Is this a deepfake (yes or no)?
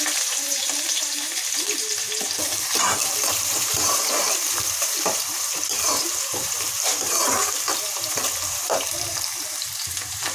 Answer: yes